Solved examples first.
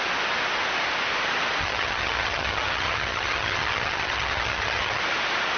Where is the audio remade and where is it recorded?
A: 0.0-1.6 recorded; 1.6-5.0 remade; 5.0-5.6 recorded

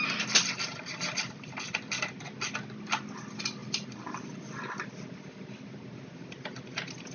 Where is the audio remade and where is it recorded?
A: 0.0-7.1 recorded